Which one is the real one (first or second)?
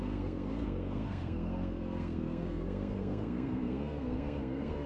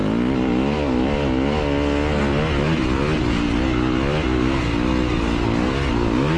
second